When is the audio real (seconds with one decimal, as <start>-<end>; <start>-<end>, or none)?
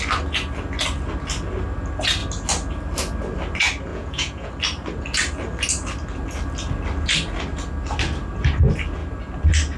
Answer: 0.0-3.9; 4.5-9.8